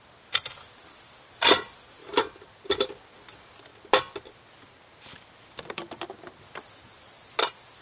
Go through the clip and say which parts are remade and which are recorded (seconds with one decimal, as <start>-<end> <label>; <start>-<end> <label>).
0.0-2.0 recorded; 2.0-2.9 remade; 2.9-7.8 recorded